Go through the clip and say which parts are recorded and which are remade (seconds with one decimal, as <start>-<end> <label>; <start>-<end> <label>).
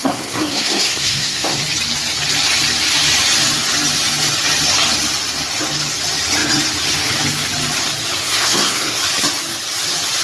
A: 0.0-1.6 remade; 1.6-8.2 recorded; 8.2-9.0 remade; 9.0-10.2 recorded